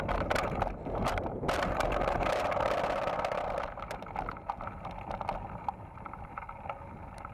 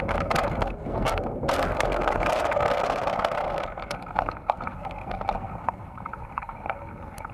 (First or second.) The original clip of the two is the first